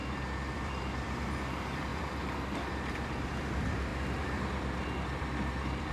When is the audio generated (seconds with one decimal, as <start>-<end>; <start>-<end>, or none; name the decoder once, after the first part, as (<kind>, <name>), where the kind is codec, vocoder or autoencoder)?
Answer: 0.0-1.9 (vocoder, BigVGAN v2); 2.9-5.9